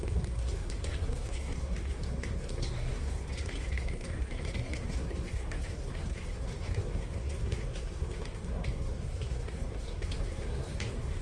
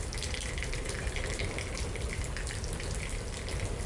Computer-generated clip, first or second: first